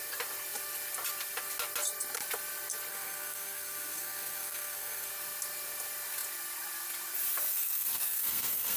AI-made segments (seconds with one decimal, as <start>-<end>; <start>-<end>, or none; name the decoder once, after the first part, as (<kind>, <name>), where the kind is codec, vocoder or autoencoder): 2.9-5.1 (codec, SNAC); 7.5-8.8

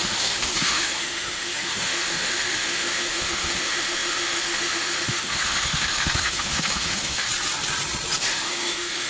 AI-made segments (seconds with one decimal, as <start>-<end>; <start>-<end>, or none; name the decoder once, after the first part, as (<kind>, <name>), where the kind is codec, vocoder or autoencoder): 0.0-7.3 (autoencoder, DAC-VAE); 8.2-9.1

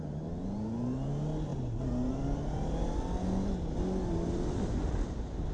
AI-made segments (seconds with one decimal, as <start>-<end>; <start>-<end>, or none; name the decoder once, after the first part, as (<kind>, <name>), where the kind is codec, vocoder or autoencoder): none